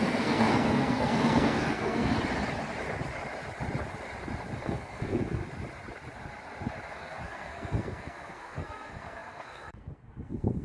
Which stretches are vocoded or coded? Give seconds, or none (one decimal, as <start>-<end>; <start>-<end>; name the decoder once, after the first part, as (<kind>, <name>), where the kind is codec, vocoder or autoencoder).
0.0-2.1 (codec, SNAC); 4.6-5.4; 6.9-10.6